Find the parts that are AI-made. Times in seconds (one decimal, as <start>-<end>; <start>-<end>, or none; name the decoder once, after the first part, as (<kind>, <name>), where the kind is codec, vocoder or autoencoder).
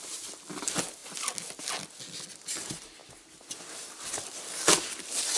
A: none